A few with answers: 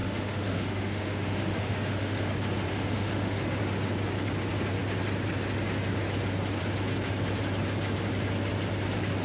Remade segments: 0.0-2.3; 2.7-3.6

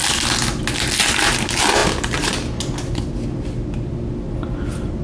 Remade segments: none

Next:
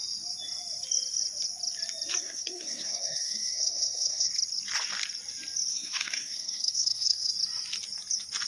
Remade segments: 2.2-4.3; 5.7-7.3

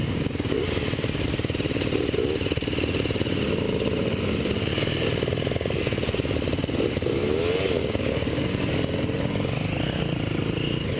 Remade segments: 0.0-0.7; 7.8-8.6

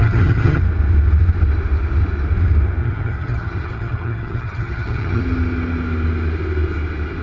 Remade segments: 0.0-0.6; 2.8-5.2